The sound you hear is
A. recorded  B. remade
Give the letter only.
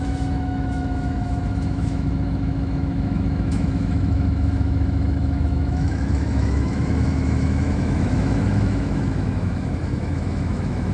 B